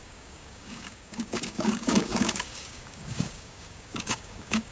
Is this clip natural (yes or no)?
no